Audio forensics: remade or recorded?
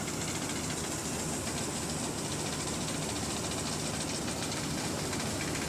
recorded